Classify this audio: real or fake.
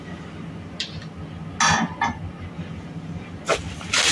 real